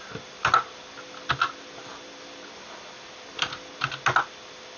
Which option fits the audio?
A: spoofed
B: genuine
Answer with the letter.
B